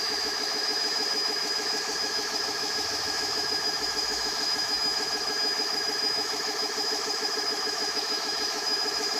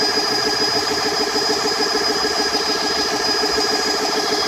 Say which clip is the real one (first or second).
second